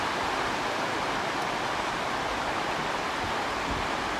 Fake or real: real